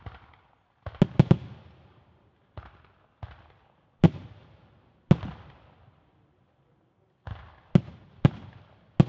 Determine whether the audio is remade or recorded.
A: recorded